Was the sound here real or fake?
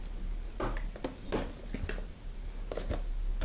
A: real